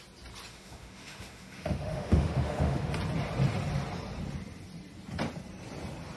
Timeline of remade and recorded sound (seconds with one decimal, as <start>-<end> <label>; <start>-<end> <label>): 0.0-0.5 recorded; 0.5-2.9 remade; 2.9-6.2 recorded